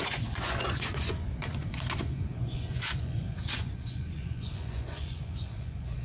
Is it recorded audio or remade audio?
remade